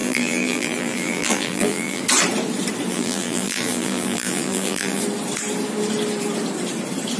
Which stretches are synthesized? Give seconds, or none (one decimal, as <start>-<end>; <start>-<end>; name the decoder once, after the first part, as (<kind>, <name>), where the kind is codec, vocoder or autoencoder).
0.0-2.0 (vocoder, BigVGAN v2); 2.9-5.0